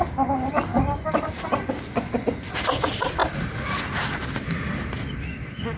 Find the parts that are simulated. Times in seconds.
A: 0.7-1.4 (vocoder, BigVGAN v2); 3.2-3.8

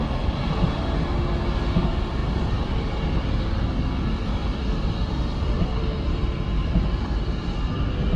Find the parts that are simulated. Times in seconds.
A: 2.2-3.6 (vocoder, BigVGAN v2)

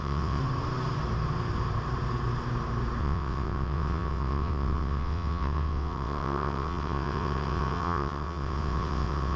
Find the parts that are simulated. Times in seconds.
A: 0.0-0.4 (vocoder, WaveNeXt); 3.0-9.4

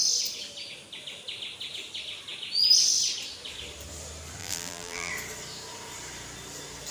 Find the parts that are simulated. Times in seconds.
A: 4.4-5.1 (vocoder, BigVGAN v2)

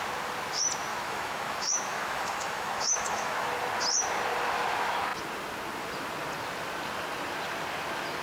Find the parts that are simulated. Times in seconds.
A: 0.9-3.4 (autoencoder, DAC-VAE)